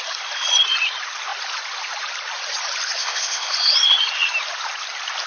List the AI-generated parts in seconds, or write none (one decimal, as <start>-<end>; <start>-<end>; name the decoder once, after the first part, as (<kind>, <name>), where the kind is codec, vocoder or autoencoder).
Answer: 3.0-3.5 (codec, ZipCodec)